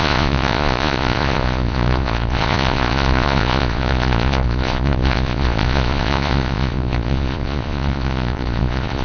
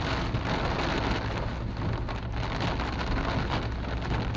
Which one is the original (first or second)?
second